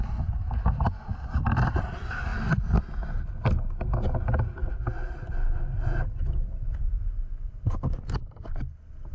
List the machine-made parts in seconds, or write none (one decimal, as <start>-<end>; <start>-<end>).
none

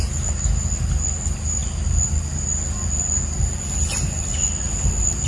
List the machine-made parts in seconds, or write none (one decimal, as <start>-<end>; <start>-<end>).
none

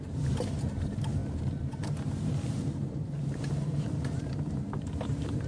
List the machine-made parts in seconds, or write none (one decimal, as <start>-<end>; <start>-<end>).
0.0-5.5

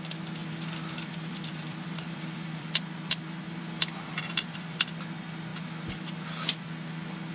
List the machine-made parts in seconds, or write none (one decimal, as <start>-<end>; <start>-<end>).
0.4-4.8